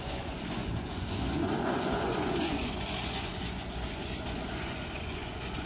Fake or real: fake